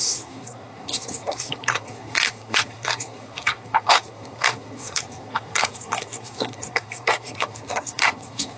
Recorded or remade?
remade